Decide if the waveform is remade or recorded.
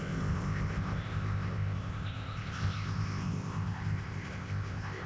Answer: remade